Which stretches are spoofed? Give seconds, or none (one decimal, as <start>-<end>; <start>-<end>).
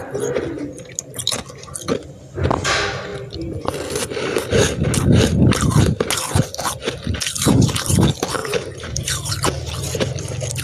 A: 8.4-9.3